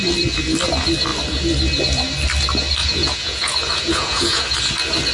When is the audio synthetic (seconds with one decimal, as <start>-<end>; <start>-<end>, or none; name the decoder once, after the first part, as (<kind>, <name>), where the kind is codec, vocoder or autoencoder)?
2.8-4.4 (vocoder, Vocos)